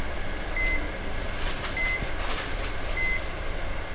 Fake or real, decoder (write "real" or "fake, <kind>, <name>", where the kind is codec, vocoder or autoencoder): real